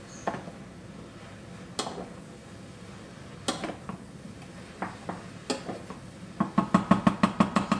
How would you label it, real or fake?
real